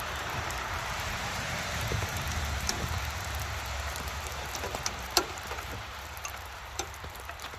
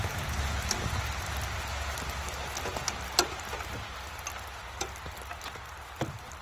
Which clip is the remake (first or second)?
first